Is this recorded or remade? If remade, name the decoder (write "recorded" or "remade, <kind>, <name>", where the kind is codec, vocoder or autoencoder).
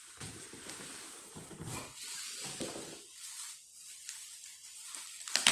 remade, vocoder, BigVGAN v2